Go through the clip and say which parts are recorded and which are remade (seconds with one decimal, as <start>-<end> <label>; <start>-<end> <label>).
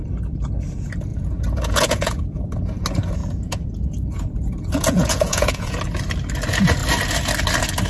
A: 0.0-1.1 recorded; 1.1-2.4 remade; 2.4-3.2 recorded; 3.2-5.8 remade; 5.8-7.9 recorded